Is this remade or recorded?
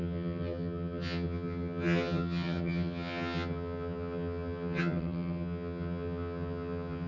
remade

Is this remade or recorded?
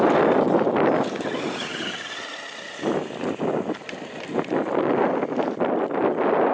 recorded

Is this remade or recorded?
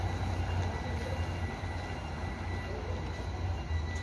recorded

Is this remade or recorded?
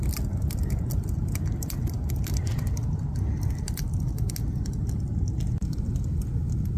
recorded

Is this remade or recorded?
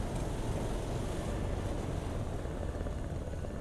recorded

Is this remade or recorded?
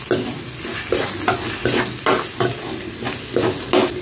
recorded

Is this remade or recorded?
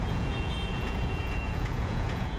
remade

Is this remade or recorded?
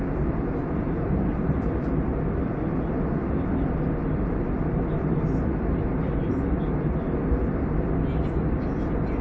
recorded